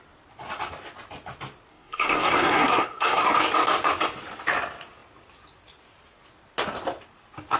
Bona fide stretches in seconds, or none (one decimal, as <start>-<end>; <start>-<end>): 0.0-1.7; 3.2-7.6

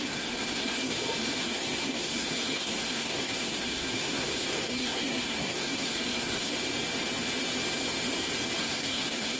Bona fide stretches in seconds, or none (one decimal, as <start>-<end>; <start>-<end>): 0.9-1.4; 6.5-8.6

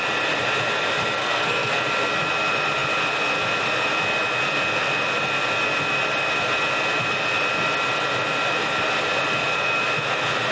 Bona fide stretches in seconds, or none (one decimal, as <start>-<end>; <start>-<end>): 0.0-1.2; 1.8-10.5

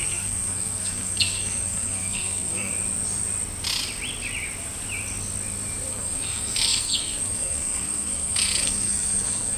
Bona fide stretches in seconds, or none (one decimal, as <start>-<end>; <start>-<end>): 2.7-5.9

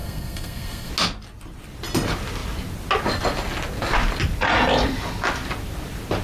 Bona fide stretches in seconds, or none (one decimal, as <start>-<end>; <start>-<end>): 0.9-6.2

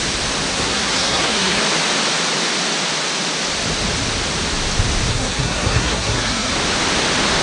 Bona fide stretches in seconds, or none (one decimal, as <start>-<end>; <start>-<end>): 0.0-0.5; 1.6-5.1; 6.5-7.4

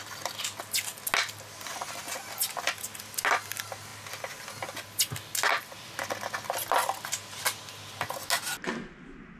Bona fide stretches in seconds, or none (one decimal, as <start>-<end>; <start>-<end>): 0.0-9.4

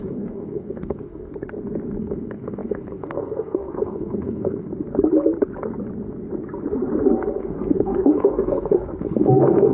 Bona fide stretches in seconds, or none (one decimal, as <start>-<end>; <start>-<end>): 1.3-2.0; 4.7-7.4